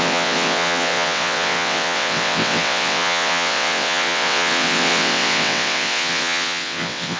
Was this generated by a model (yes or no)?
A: yes